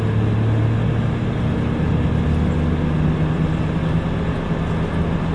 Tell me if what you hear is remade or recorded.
recorded